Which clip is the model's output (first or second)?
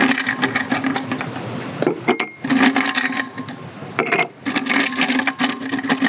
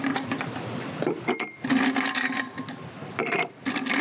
second